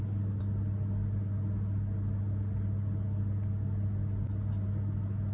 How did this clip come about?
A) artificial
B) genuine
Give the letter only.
B